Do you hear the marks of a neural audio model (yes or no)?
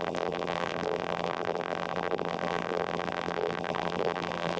yes